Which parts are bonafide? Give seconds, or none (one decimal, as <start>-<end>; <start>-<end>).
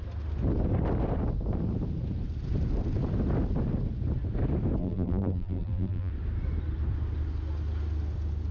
0.0-4.8; 6.1-8.5